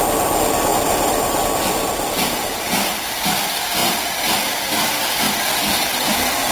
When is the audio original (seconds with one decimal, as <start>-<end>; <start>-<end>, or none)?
0.0-0.7; 1.4-3.8; 5.4-6.5

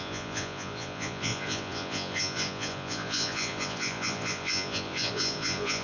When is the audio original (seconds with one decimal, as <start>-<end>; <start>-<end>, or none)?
none

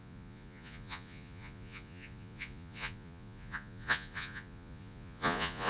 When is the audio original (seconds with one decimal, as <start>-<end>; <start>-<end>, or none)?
none

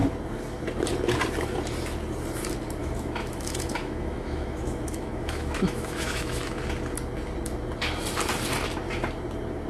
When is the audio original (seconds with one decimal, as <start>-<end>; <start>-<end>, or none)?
0.0-2.8; 6.6-9.7

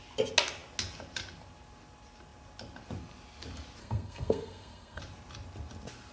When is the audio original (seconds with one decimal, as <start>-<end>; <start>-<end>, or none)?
0.0-3.8; 5.0-6.1

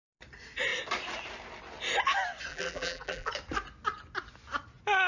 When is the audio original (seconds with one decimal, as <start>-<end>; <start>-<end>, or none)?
0.0-2.5; 3.3-5.1